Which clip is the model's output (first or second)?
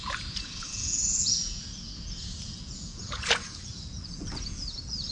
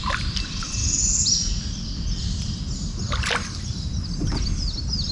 first